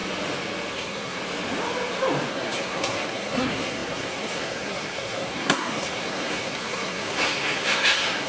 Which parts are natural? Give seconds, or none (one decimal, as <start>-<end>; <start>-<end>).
0.0-0.7; 1.2-2.3